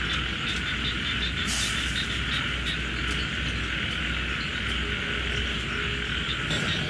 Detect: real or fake real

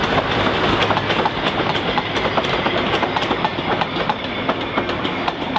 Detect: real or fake real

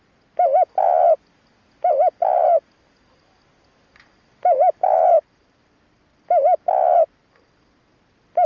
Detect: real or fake real